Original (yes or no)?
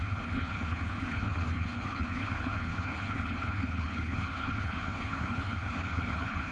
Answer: no